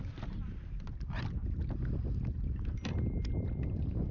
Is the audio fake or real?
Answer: real